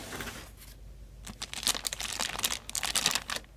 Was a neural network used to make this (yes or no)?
no